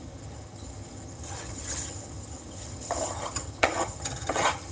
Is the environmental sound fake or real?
fake